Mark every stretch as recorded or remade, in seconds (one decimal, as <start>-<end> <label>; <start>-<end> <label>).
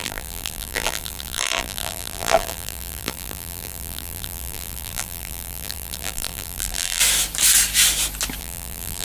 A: 0.0-7.0 remade; 7.0-8.4 recorded; 8.4-9.0 remade